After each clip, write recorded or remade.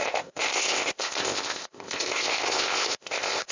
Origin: remade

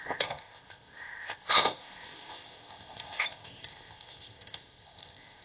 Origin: remade